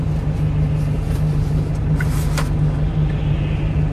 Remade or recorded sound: recorded